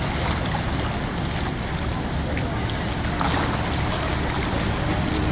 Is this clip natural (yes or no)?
yes